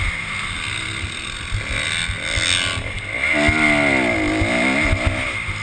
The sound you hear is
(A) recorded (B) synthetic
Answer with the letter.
A